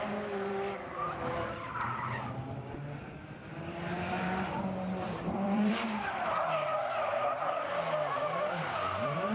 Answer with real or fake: fake